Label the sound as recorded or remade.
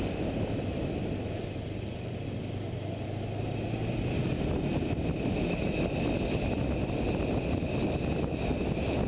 recorded